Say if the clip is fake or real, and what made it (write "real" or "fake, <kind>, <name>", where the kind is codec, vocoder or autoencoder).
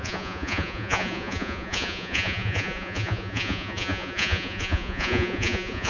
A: fake, vocoder, Vocos